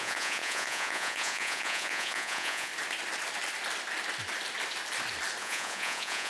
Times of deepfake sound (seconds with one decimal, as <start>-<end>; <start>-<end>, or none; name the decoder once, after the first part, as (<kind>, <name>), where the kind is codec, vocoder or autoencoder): 0.0-2.7 (vocoder, Vocos); 5.4-6.3